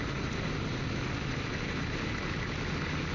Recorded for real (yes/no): yes